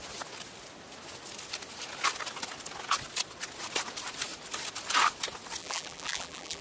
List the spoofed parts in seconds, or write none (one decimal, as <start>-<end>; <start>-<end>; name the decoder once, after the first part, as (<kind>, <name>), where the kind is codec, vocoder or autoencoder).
5.6-6.6 (vocoder, BigVGAN v2)